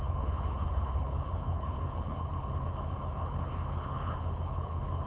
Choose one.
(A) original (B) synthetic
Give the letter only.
B